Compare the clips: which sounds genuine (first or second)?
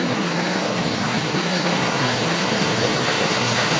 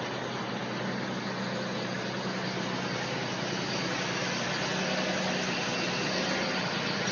second